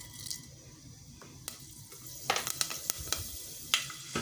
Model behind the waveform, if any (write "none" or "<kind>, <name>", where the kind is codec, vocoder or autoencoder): none